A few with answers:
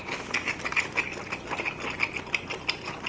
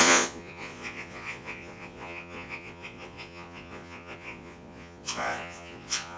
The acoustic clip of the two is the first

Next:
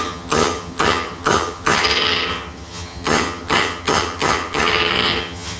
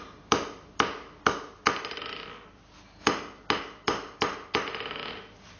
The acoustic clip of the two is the second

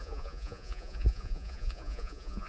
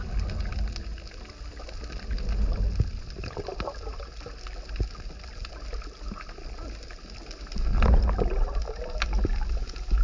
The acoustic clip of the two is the second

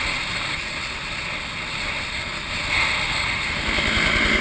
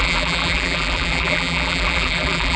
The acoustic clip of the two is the first